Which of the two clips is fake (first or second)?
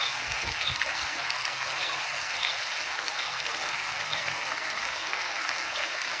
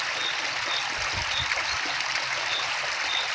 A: first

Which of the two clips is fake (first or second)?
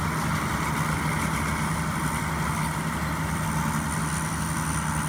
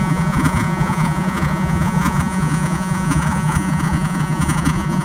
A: second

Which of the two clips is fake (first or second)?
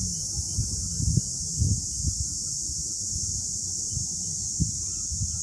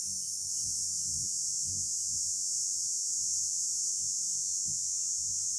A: second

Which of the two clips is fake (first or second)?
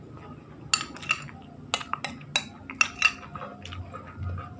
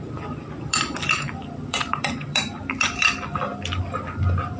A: second